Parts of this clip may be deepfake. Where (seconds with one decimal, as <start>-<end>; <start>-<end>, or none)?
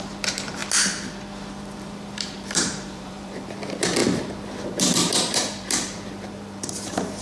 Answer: 0.0-0.6; 1.6-7.2